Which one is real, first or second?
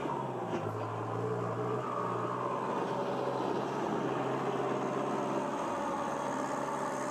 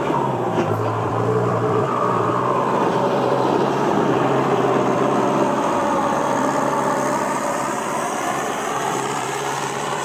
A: first